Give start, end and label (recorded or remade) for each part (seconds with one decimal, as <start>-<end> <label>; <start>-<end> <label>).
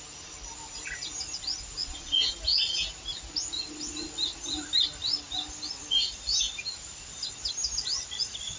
0.0-1.8 recorded; 1.8-2.3 remade; 2.3-8.6 recorded